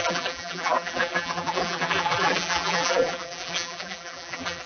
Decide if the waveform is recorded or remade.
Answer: remade